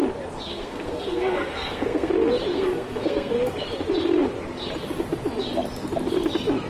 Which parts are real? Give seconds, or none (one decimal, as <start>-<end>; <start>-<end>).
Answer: 0.0-0.4; 2.1-2.5; 3.3-6.7